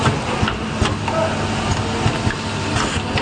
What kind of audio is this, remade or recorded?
recorded